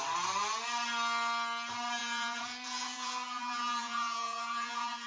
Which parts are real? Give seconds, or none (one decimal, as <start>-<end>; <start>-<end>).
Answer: 0.0-2.0